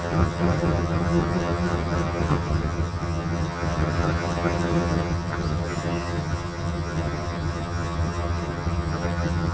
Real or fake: fake